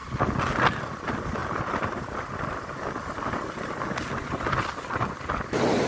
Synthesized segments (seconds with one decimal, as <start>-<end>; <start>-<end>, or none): none